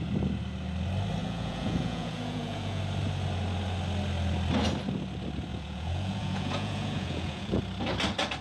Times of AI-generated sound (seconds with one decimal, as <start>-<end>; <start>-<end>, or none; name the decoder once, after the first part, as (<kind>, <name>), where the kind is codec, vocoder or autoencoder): 1.2-2.8 (vocoder, Vocos); 5.5-7.6